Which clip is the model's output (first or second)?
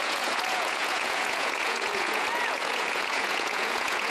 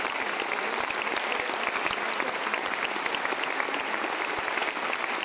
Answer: first